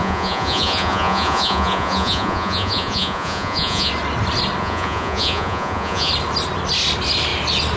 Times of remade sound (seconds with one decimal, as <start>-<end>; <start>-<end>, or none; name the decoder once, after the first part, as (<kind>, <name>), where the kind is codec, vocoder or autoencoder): 0.0-3.9 (vocoder, Vocos); 4.6-6.1